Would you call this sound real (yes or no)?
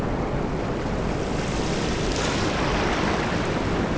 yes